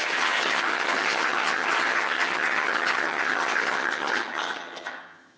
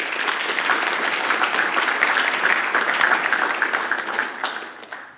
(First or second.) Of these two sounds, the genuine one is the second